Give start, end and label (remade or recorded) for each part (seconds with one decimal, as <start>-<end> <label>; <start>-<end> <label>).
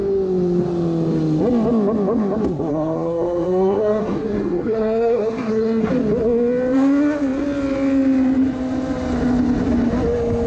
0.0-2.7 recorded; 2.7-5.9 remade; 5.9-10.5 recorded